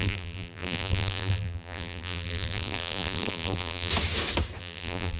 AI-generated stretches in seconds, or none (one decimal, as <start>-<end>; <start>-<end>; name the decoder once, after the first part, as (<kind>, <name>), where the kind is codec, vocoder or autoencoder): 0.0-3.9 (vocoder, BigVGAN v2); 4.6-5.2